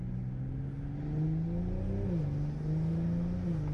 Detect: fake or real real